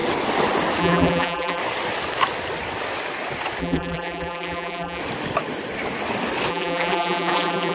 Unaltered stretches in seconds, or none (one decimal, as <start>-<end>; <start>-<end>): 0.0-0.8; 1.6-3.6; 5.0-6.5